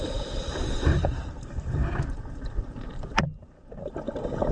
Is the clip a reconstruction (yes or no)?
yes